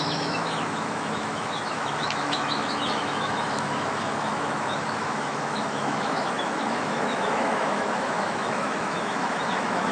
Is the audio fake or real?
fake